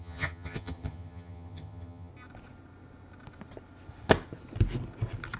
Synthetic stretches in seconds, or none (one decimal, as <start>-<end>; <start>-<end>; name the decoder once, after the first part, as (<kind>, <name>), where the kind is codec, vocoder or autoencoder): 0.0-2.1 (vocoder, HiFi-GAN)